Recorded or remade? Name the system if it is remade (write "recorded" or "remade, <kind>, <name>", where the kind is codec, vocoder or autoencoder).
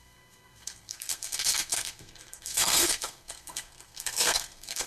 remade, codec, SNAC